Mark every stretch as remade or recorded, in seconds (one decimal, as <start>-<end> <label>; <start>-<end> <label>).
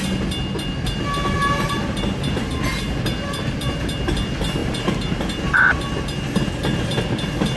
0.0-1.4 recorded; 1.4-2.0 remade; 2.0-4.6 recorded; 4.6-5.8 remade; 5.8-7.6 recorded